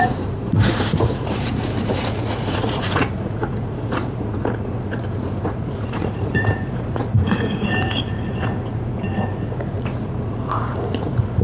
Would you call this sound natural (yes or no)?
no